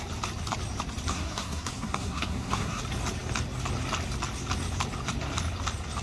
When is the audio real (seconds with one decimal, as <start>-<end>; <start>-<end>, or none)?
0.0-1.1; 2.8-6.0